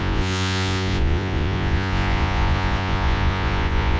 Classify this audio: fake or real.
fake